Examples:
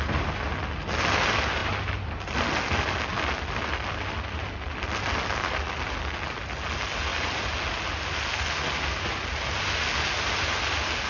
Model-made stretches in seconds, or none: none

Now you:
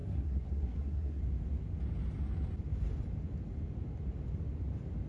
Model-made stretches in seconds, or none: 0.0-1.2 (codec, SNAC)

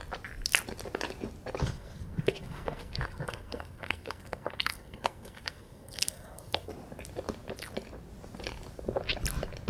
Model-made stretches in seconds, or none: 1.6-6.7 (codec, SNAC)

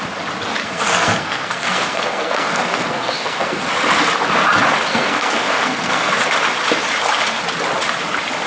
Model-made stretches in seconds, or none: 0.6-3.7 (codec, SNAC); 4.9-6.1